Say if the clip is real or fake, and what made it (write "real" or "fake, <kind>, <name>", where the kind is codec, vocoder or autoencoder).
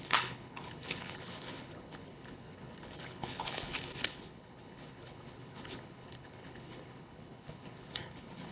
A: fake, codec, HILCodec